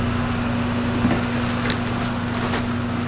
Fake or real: real